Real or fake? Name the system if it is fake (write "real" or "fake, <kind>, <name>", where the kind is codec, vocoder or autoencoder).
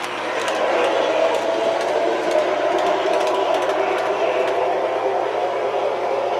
real